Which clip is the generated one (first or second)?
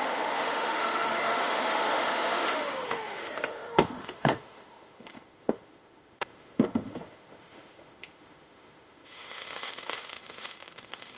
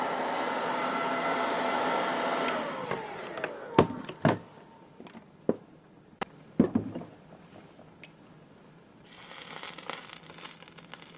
first